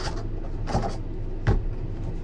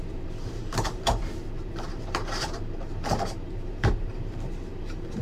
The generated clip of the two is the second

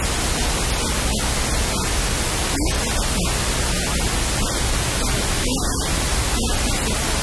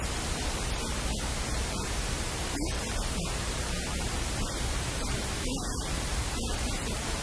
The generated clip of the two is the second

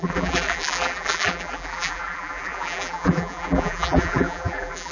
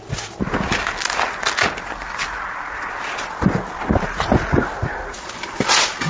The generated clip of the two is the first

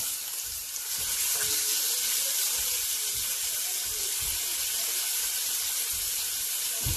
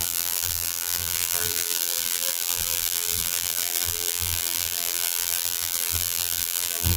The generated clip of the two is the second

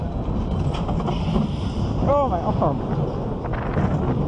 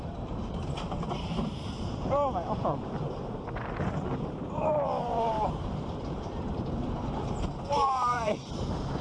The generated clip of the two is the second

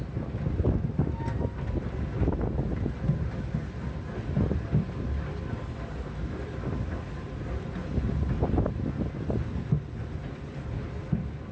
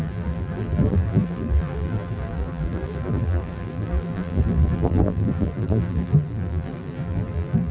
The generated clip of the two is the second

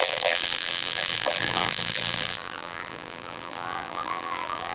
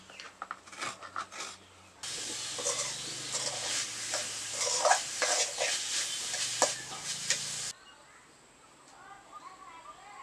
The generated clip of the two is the first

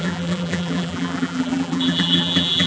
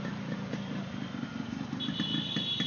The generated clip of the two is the first